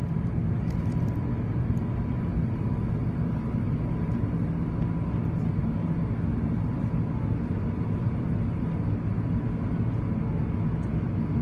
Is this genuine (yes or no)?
yes